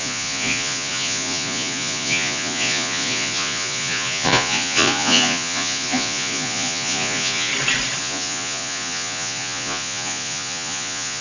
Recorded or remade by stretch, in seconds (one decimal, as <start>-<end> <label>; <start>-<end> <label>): 0.0-7.5 remade; 7.5-8.0 recorded; 8.0-11.2 remade